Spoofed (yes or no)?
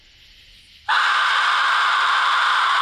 no